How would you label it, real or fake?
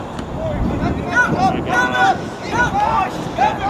real